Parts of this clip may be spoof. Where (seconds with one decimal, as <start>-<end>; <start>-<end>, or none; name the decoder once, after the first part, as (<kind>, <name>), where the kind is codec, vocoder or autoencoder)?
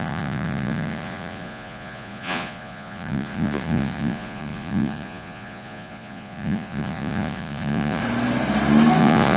0.0-8.0 (vocoder, Vocos); 9.0-9.4